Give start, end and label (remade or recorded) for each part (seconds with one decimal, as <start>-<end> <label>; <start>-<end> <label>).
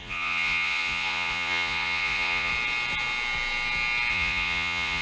0.0-2.5 remade; 2.5-4.1 recorded; 4.1-5.0 remade